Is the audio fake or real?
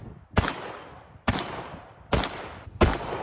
real